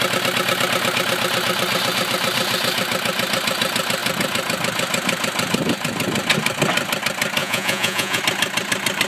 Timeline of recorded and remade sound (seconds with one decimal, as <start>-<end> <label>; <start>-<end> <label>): 0.0-7.4 recorded; 7.4-8.2 remade; 8.2-9.1 recorded